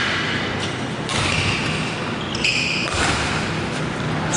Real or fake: real